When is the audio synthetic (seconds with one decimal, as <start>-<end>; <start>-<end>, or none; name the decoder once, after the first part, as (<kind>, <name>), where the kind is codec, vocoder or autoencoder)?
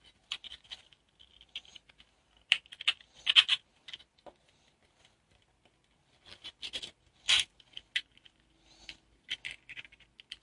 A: none